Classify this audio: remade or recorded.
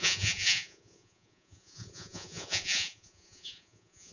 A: remade